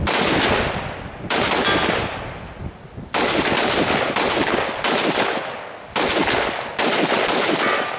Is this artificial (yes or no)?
no